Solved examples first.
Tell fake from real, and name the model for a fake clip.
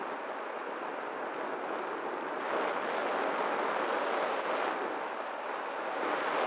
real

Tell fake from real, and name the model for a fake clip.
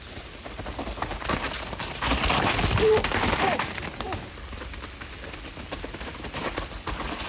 real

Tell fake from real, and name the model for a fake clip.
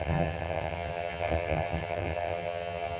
fake, vocoder, HiFi-GAN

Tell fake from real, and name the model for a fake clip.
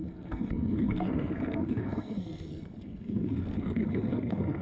fake, codec, SNAC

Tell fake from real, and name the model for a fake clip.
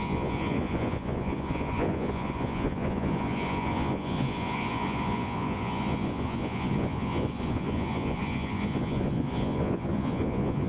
fake, vocoder, Vocos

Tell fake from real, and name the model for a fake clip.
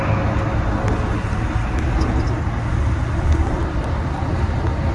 real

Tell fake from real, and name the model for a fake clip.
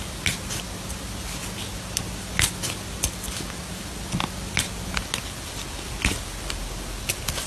real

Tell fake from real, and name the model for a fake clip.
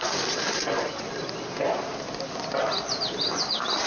fake, vocoder, BigVGAN v2